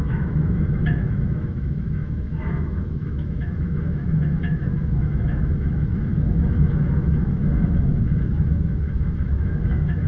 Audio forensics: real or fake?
fake